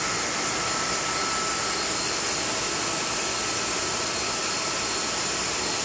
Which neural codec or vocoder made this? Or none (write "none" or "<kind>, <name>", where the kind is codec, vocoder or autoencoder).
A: none